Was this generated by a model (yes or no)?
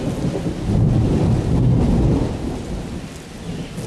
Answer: no